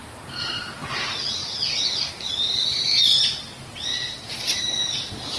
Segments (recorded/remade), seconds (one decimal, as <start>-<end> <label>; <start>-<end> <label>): 0.0-5.4 recorded